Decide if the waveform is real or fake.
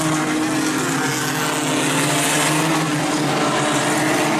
real